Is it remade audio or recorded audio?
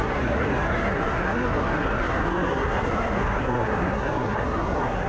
remade